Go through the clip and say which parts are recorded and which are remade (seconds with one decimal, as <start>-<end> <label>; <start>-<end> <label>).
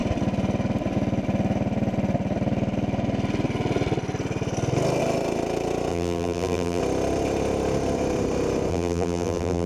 0.0-5.9 recorded; 5.9-6.8 remade; 6.8-8.7 recorded; 8.7-9.7 remade